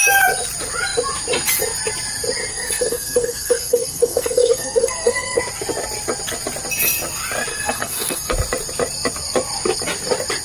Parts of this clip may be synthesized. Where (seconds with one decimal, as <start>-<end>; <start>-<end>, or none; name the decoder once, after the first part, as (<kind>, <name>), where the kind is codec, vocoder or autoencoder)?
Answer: 2.5-5.4 (codec, SNAC); 7.5-8.3